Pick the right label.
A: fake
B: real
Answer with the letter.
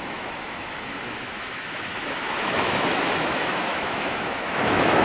A